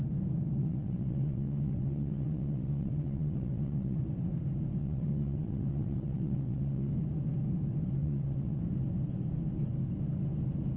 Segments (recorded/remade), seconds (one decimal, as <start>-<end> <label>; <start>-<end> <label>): 0.0-0.6 recorded; 0.6-4.0 remade; 4.0-4.8 recorded; 4.8-6.9 remade; 6.9-8.0 recorded; 8.0-8.6 remade; 8.6-10.8 recorded